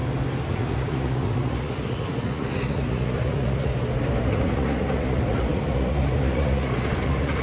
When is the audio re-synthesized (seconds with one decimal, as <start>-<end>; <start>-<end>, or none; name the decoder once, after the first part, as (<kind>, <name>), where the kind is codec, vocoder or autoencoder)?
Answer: 0.5-3.7 (vocoder, Vocos); 4.2-7.4